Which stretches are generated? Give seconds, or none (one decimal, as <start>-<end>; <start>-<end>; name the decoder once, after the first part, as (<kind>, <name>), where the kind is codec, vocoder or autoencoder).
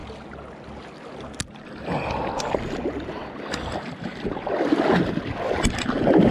none